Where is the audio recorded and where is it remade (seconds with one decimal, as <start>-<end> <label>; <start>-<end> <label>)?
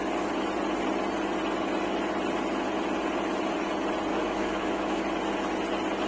0.0-4.1 recorded; 4.1-5.0 remade; 5.0-6.1 recorded